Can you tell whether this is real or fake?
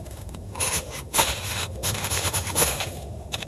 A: fake